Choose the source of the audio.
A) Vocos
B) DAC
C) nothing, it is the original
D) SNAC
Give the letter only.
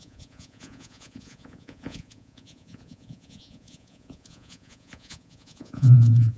A